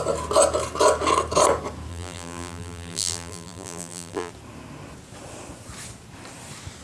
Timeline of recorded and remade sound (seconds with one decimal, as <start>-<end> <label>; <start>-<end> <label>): 0.0-1.9 recorded; 1.9-4.3 remade; 4.3-6.8 recorded